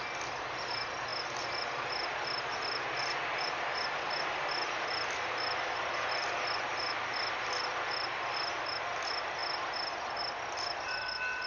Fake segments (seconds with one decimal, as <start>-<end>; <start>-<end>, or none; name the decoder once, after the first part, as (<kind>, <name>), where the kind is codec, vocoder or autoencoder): none